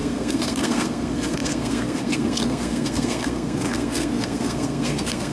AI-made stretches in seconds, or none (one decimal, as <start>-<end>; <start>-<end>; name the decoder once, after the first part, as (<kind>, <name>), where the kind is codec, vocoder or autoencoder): 0.0-5.3 (codec, SNAC)